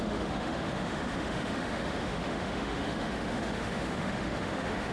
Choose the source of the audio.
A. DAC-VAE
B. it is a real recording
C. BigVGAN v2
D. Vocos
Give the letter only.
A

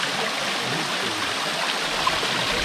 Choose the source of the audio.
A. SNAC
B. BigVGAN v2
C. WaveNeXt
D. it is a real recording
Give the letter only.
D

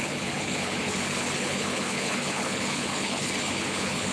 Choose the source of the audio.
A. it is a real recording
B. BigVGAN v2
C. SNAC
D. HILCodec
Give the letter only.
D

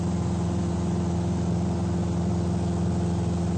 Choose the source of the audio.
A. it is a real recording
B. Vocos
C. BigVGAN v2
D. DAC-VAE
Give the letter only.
A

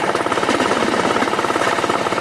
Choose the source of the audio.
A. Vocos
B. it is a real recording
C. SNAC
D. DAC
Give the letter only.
B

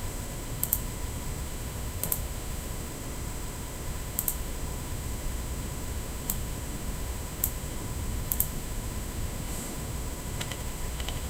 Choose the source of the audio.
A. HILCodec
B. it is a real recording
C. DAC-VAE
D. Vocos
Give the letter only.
C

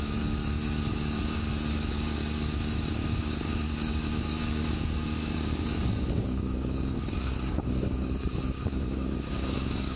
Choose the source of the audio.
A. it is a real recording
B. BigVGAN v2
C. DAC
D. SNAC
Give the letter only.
C